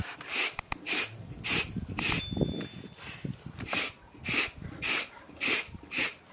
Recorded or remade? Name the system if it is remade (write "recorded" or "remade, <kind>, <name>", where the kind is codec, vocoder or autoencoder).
recorded